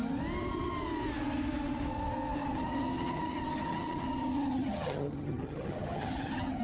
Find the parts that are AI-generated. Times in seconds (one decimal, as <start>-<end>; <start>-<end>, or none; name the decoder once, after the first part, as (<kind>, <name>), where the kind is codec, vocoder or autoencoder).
2.4-6.6 (vocoder, HiFi-GAN)